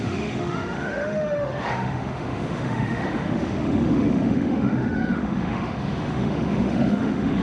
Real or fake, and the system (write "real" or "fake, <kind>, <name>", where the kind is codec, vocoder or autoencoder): fake, autoencoder, DAC-VAE